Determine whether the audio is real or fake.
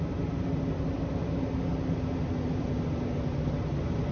real